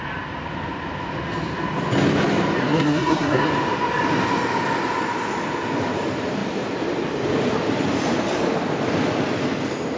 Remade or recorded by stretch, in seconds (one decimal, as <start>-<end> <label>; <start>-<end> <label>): 0.0-2.6 recorded; 2.6-3.5 remade; 3.5-10.0 recorded